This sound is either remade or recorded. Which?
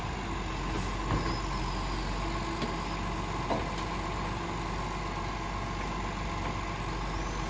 recorded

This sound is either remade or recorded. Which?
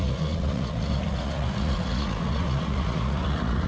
remade